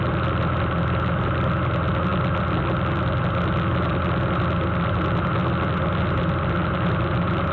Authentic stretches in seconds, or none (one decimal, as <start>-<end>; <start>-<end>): 0.0-7.5